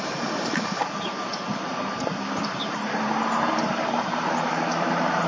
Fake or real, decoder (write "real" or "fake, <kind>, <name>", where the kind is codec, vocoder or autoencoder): fake, vocoder, BigVGAN v2